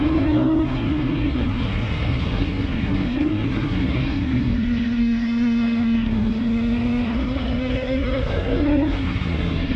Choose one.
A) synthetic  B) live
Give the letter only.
A